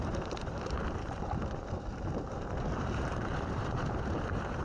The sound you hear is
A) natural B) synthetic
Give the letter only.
B